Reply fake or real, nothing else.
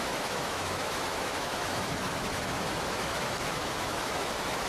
fake